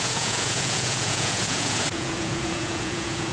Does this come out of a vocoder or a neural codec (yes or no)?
yes